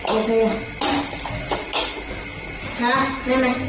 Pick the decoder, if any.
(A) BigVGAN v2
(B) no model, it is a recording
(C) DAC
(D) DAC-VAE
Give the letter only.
B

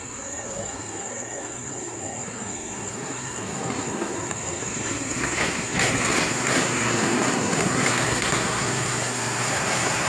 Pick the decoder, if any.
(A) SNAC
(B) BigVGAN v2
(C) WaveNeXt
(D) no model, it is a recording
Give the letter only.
A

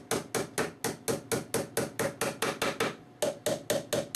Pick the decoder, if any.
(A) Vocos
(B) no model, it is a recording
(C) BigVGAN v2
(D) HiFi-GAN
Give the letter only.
B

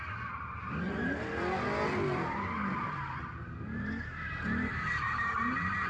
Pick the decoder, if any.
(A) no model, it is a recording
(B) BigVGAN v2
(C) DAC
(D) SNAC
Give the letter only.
A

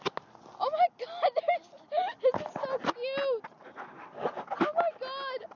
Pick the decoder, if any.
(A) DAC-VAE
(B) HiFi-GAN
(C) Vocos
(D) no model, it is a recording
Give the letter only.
D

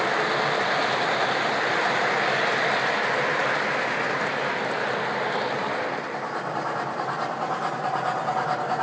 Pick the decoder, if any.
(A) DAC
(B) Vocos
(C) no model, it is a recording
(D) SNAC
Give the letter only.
C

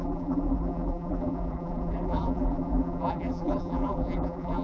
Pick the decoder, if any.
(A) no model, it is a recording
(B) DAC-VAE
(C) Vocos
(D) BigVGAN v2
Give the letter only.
D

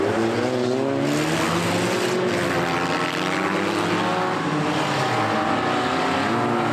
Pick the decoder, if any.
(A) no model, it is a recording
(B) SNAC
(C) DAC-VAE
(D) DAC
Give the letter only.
A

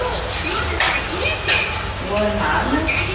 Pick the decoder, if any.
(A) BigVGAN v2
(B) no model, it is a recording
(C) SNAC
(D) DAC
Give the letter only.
B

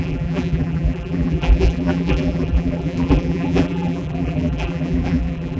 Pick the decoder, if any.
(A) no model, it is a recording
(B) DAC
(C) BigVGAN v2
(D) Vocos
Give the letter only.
C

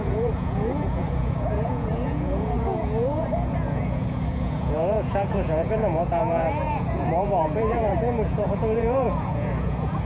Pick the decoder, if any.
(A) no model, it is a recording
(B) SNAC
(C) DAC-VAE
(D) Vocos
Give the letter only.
D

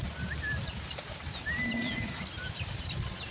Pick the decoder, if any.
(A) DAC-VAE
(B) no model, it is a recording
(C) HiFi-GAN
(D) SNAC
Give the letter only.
B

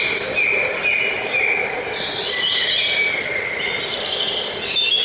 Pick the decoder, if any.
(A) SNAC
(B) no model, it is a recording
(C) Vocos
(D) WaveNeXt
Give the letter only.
B